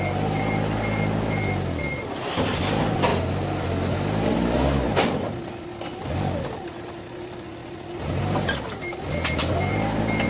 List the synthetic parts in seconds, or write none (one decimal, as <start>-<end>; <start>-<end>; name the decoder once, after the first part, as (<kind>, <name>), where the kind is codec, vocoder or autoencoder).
none